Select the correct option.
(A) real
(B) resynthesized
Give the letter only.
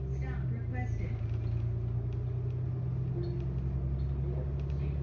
A